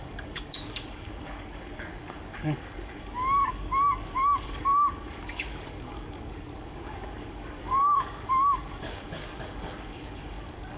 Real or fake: fake